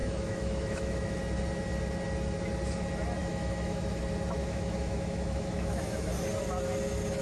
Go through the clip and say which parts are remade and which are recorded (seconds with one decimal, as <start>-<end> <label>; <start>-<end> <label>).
0.0-1.2 remade; 1.2-3.2 recorded; 3.2-4.0 remade; 4.0-4.4 recorded; 4.4-6.1 remade; 6.1-7.2 recorded